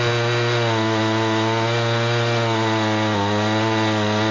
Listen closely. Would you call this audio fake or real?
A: real